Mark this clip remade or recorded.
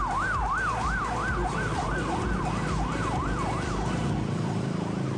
recorded